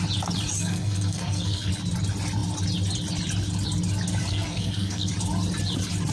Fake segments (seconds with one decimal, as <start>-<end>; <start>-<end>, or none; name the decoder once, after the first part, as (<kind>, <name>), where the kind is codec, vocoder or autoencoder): 0.6-1.7 (codec, SNAC); 4.3-5.1